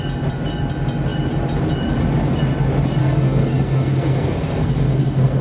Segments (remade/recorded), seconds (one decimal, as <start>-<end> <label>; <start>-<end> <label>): 0.0-3.0 recorded; 3.0-5.4 remade